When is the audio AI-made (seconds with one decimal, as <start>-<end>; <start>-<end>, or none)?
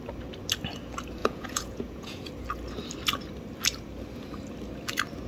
1.2-2.3